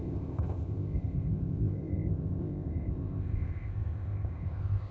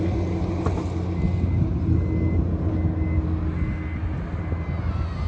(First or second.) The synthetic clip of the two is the first